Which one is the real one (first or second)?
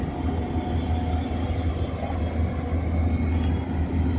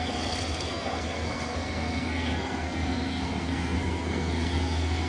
first